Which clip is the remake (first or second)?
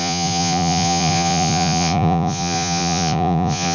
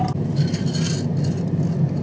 first